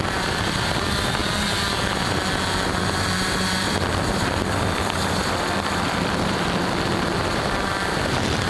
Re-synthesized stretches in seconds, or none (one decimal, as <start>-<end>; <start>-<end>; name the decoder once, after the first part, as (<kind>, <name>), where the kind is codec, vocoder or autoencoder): 0.0-1.2 (vocoder, BigVGAN v2); 3.3-8.5